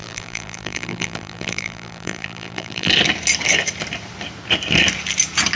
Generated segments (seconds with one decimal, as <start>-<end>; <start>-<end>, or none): 0.0-2.9